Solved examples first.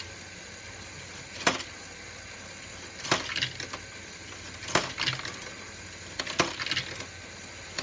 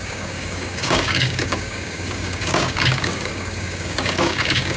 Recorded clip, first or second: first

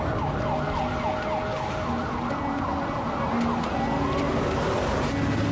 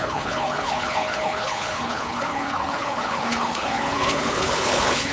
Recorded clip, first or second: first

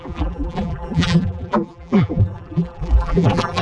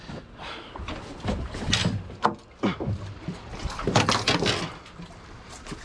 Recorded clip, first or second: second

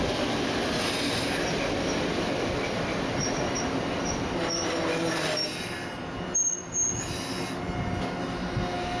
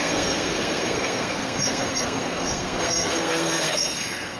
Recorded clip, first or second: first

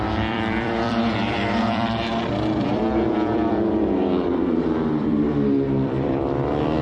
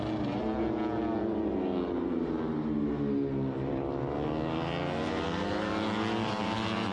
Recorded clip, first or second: second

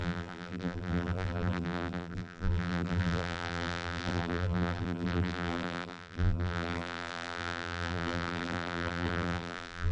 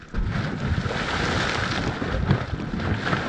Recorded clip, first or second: second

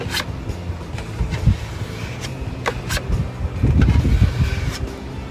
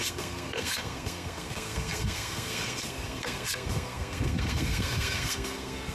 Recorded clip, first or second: first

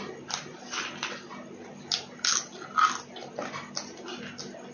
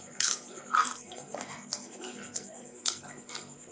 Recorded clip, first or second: first